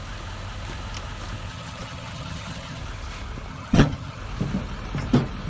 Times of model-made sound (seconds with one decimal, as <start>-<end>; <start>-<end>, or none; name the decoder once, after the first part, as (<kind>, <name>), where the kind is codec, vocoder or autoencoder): 1.5-2.8 (vocoder, HiFi-GAN); 3.5-4.2